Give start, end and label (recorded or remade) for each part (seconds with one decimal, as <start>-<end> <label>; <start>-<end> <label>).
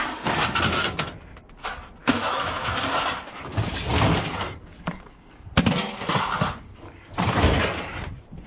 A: 0.0-2.0 recorded; 2.0-2.7 remade; 2.7-8.5 recorded